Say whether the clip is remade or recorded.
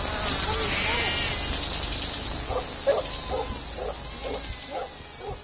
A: recorded